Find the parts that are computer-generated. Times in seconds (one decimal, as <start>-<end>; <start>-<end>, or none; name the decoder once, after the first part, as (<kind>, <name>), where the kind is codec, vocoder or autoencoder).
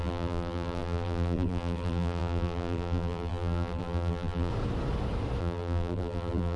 0.0-4.5 (vocoder, BigVGAN v2); 5.4-6.6